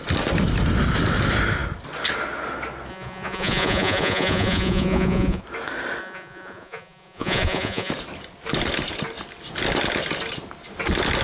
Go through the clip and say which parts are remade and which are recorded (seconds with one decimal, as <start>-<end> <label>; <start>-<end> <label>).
0.0-2.9 recorded; 2.9-5.4 remade; 5.4-6.0 recorded; 6.0-7.9 remade; 7.9-11.2 recorded